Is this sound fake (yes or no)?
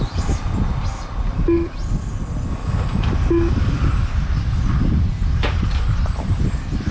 no